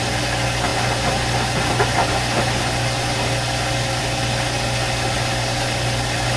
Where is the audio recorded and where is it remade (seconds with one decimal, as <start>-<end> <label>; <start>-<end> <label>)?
0.0-6.4 recorded